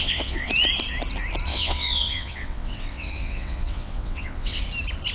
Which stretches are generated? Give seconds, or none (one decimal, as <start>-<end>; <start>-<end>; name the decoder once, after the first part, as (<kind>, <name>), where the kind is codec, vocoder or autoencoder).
0.0-0.5 (vocoder, WaveNeXt); 1.5-4.6